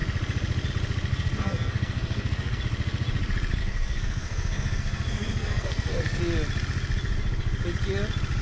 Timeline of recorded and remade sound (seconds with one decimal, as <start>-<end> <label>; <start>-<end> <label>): 0.0-1.1 recorded; 1.1-2.6 remade; 2.6-3.6 recorded; 3.6-6.2 remade; 6.2-8.4 recorded